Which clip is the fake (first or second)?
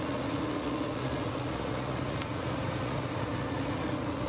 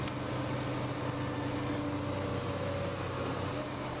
first